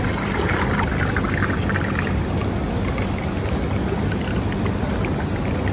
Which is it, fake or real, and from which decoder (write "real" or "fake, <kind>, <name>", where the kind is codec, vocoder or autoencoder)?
real